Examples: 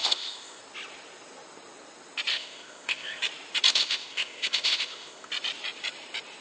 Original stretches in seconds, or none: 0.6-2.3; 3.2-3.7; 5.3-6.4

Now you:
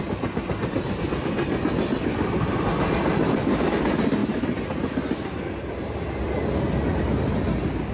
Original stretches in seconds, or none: 0.0-7.9

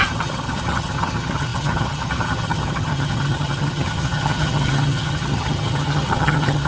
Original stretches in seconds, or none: none

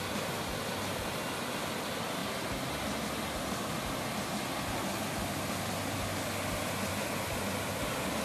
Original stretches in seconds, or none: 0.0-8.2

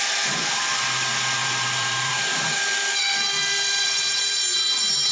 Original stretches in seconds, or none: 0.0-1.4; 2.6-5.1